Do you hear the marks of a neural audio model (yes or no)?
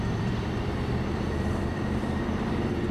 yes